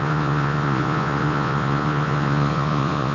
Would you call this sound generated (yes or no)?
yes